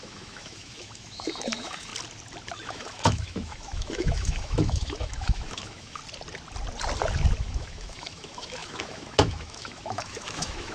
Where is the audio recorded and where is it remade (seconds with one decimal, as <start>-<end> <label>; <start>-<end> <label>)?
0.0-1.9 remade; 1.9-2.6 recorded; 2.6-6.0 remade; 6.0-7.4 recorded; 7.4-10.7 remade